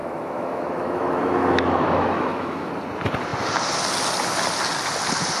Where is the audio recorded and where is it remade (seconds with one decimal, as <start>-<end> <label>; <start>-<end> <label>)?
0.0-2.7 remade; 2.7-5.4 recorded

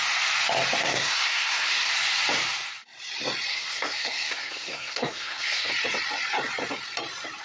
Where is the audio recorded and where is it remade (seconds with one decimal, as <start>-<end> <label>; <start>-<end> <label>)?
0.0-0.8 recorded; 0.8-1.9 remade; 1.9-3.5 recorded; 3.5-5.7 remade; 5.7-7.4 recorded